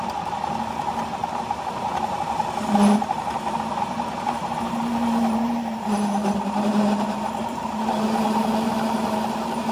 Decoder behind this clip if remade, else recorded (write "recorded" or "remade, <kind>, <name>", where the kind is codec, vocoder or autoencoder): remade, vocoder, BigVGAN v2